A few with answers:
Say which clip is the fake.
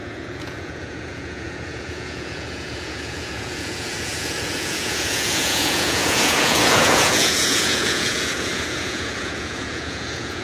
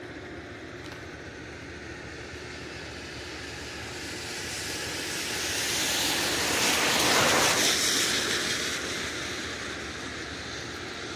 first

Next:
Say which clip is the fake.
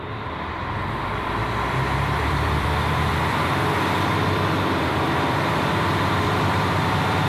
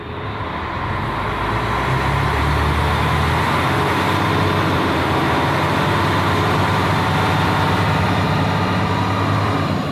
first